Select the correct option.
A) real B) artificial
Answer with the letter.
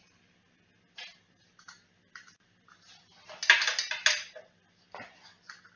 A